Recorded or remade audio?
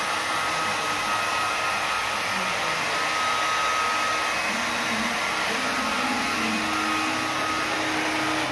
recorded